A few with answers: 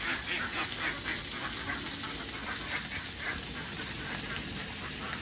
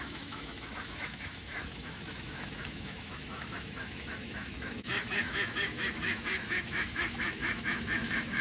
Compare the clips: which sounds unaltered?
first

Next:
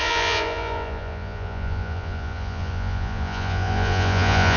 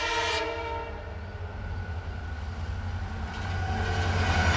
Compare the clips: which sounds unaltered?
second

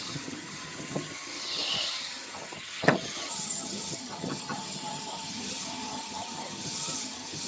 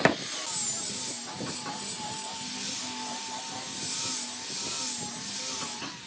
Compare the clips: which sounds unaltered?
second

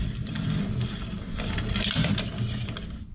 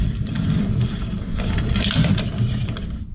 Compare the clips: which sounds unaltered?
first